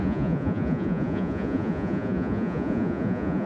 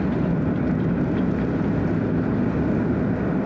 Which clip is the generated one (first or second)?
first